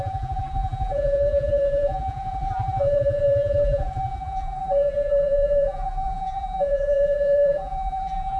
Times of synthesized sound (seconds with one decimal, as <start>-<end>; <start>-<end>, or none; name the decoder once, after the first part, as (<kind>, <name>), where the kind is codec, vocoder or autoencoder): 0.0-8.4 (vocoder, BigVGAN v2)